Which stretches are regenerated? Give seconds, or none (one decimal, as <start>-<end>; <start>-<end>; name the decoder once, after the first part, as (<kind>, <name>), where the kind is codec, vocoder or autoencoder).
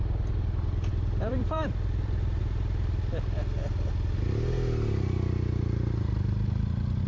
0.9-2.4 (vocoder, BigVGAN v2)